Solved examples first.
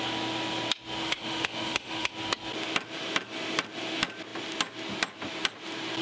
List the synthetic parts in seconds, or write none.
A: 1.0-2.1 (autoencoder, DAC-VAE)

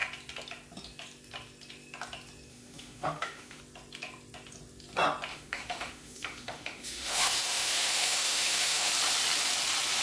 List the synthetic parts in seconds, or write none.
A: 2.5-3.6 (autoencoder, DAC-VAE); 5.3-8.9

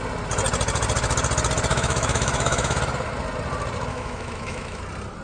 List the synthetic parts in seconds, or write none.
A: 1.7-2.8 (autoencoder, DAC-VAE); 3.9-4.8